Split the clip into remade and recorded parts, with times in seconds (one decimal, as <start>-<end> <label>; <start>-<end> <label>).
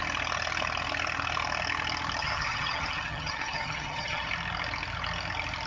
0.0-2.2 recorded; 2.2-4.3 remade; 4.3-5.7 recorded